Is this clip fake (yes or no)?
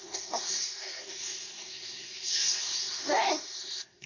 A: yes